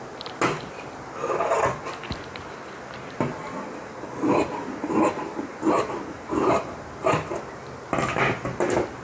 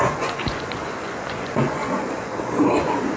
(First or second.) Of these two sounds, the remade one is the second